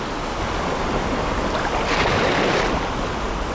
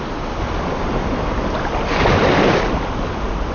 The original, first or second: first